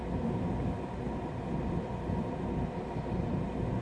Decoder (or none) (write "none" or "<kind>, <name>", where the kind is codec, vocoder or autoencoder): none